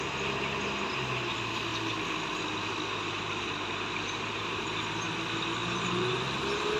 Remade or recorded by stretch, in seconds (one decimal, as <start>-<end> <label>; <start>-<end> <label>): 0.0-5.6 recorded; 5.6-6.2 remade; 6.2-6.8 recorded